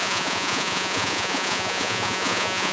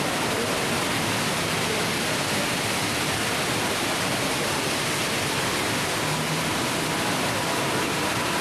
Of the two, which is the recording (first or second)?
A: second